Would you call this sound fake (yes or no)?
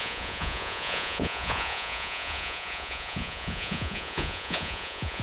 yes